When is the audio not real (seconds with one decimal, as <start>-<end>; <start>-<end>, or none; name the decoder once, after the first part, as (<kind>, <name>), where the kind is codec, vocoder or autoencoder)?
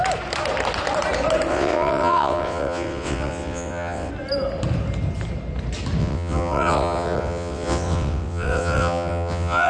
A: 1.5-4.1 (vocoder, WaveNeXt); 6.0-9.7